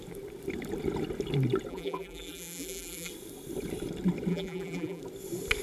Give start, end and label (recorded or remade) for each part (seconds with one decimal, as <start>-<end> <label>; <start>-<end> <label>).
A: 0.0-1.7 recorded; 1.7-3.1 remade; 3.1-4.3 recorded; 4.3-5.0 remade; 5.0-5.6 recorded